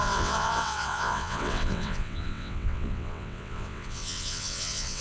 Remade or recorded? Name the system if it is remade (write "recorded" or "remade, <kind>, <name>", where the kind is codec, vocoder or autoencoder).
remade, vocoder, WaveNeXt